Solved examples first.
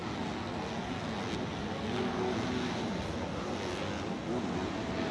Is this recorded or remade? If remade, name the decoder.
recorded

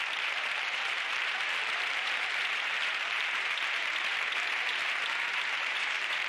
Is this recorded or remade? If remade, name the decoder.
remade, vocoder, BigVGAN v2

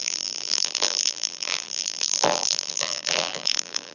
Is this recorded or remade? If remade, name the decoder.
remade, vocoder, BigVGAN v2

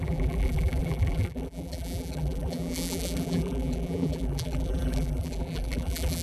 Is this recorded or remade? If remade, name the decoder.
remade, vocoder, BigVGAN v2